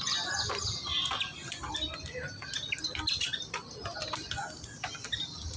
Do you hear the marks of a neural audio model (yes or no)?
no